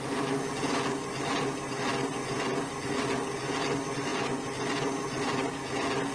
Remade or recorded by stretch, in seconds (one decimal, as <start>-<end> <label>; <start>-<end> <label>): 0.0-6.1 recorded